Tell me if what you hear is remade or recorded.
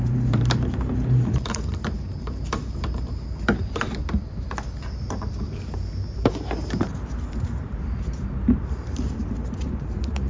remade